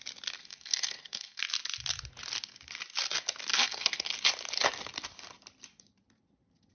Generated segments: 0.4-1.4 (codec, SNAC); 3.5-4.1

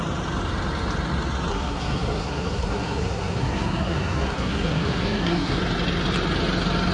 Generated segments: 1.5-5.6 (codec, SNAC)

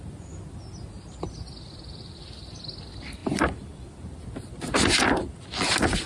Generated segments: none

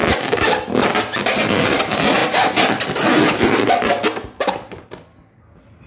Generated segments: none

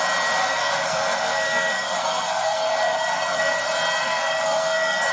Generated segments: 0.4-3.5 (codec, SNAC); 4.0-5.1

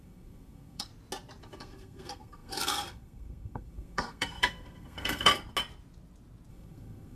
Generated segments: 0.0-0.9 (codec, SNAC); 1.4-5.3; 6.5-7.2